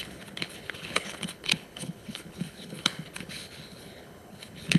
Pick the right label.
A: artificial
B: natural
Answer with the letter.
A